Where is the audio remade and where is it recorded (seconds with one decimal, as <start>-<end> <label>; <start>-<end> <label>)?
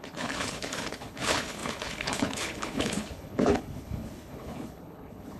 0.0-5.4 remade